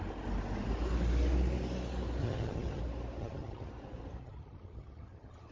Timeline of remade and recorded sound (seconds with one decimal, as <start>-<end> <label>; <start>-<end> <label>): 0.0-2.2 recorded; 2.2-2.8 remade; 2.8-3.2 recorded; 3.2-3.7 remade; 3.7-4.2 recorded; 4.2-5.5 remade

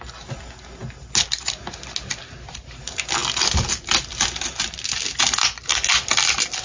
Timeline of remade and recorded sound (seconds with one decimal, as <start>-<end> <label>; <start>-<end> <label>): 0.0-6.6 recorded

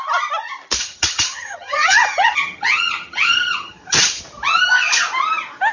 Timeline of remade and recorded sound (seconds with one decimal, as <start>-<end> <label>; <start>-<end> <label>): 0.0-0.8 recorded; 0.8-4.2 remade; 4.2-5.7 recorded

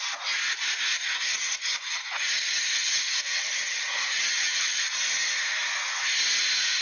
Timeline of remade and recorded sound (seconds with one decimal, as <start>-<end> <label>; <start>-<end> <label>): 0.0-0.9 recorded; 0.9-4.8 remade; 4.8-6.8 recorded

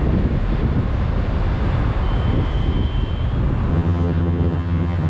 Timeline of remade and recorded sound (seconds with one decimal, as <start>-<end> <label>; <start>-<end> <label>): 0.0-3.7 recorded; 3.7-5.1 remade

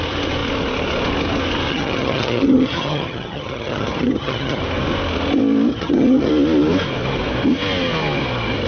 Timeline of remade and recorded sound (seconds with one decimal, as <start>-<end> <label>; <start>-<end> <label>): 0.0-1.7 recorded; 1.7-4.6 remade; 4.6-5.7 recorded; 5.7-6.3 remade; 6.3-8.7 recorded